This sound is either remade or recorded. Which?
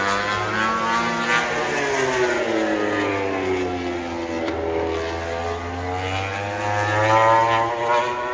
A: recorded